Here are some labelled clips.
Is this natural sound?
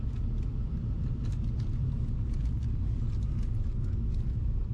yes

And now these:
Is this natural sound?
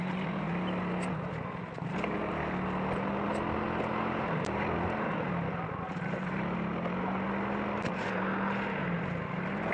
yes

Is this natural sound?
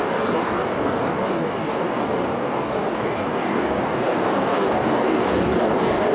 no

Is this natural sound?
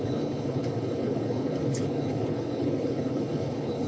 no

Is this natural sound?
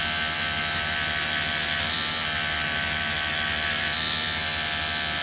yes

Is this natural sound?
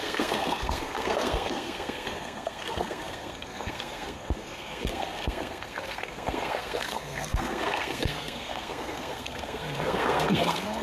no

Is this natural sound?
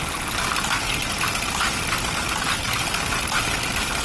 yes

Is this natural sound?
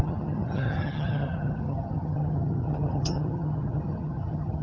no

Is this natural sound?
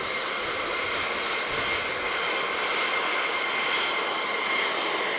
yes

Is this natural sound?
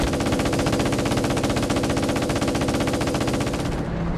yes